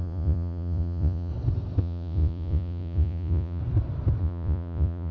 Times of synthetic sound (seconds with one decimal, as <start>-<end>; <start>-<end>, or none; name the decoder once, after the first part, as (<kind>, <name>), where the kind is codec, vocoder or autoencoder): 0.0-1.3 (vocoder, Vocos); 1.8-3.6; 4.2-5.1